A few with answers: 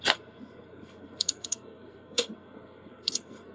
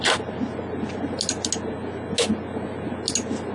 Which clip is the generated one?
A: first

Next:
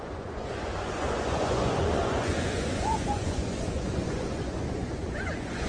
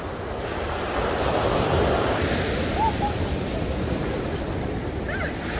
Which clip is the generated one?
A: first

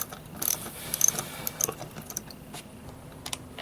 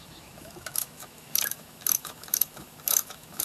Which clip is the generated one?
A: second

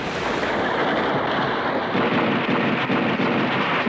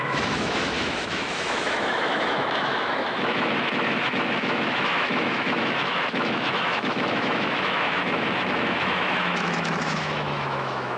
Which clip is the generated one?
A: second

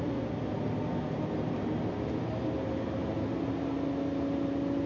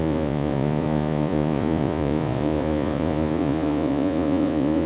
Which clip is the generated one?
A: second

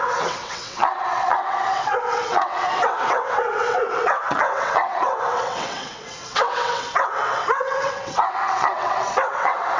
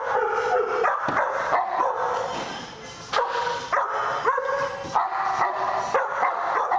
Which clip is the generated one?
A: first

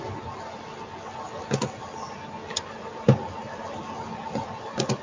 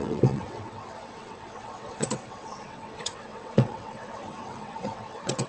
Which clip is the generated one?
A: second